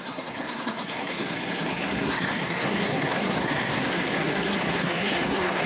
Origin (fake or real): fake